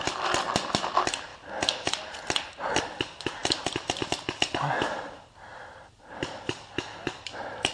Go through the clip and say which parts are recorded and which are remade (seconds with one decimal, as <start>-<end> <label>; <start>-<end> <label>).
0.0-3.4 recorded; 3.4-6.0 remade; 6.0-7.7 recorded